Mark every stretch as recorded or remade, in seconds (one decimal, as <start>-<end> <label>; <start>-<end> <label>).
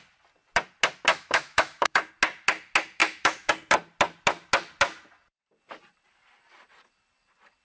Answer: 0.0-1.1 recorded; 1.1-2.1 remade; 2.1-3.0 recorded; 3.0-3.5 remade; 3.5-7.6 recorded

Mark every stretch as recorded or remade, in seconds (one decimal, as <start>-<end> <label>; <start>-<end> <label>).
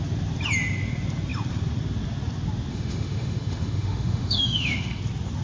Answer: 0.0-2.7 recorded; 2.7-5.0 remade; 5.0-5.4 recorded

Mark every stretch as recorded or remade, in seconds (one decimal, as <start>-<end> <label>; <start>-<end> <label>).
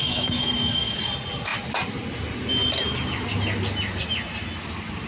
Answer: 0.0-1.0 remade; 1.0-5.1 recorded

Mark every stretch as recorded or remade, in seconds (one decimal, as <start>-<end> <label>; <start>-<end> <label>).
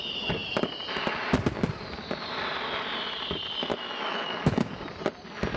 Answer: 0.0-3.6 recorded; 3.6-4.7 remade; 4.7-5.6 recorded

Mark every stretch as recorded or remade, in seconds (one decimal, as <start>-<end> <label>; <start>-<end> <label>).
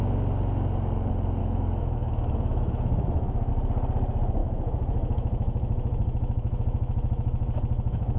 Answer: 0.0-1.4 recorded; 1.4-3.5 remade; 3.5-4.4 recorded; 4.4-8.2 remade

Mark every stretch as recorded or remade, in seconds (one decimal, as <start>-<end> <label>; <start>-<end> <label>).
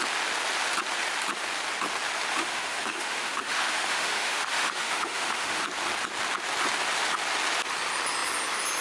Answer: 0.0-2.3 recorded; 2.3-5.6 remade; 5.6-8.8 recorded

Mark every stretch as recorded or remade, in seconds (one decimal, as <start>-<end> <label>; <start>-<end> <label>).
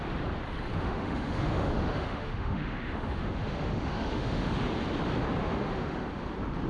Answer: 0.0-0.7 recorded; 0.7-4.7 remade; 4.7-5.4 recorded; 5.4-6.1 remade; 6.1-6.7 recorded